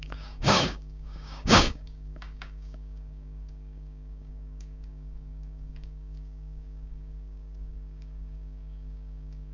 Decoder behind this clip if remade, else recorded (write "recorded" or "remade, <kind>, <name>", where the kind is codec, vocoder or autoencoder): remade, codec, DAC